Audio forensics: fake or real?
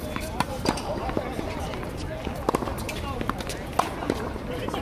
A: real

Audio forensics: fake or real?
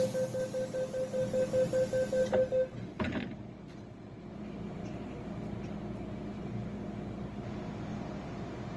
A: real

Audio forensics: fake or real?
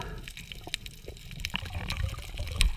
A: real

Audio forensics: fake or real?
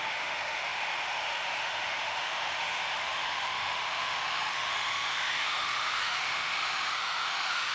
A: fake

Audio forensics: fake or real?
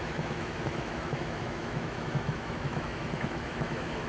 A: fake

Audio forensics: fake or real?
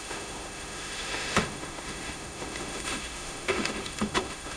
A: fake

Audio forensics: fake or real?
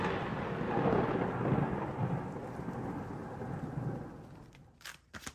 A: real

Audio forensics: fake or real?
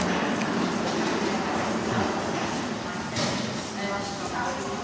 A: real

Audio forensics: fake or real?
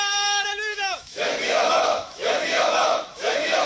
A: fake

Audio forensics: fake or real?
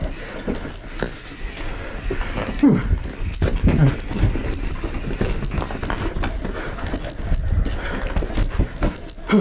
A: real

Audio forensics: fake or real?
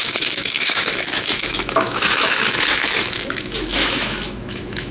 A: fake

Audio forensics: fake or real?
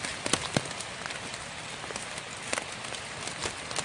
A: real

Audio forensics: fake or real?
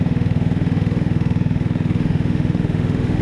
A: fake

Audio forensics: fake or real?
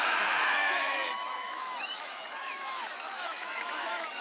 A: fake